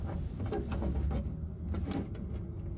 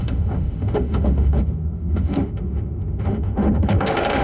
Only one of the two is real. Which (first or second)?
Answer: first